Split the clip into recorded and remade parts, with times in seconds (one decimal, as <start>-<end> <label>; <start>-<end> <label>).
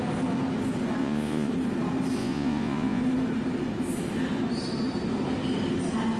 0.0-1.0 recorded; 1.0-1.5 remade; 1.5-2.2 recorded; 2.2-3.0 remade; 3.0-6.2 recorded